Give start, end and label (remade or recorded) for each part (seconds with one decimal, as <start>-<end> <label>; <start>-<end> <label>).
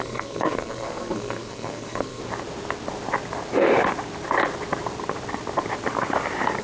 0.0-2.2 remade; 2.2-6.6 recorded